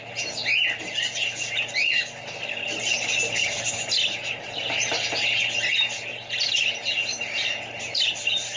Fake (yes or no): no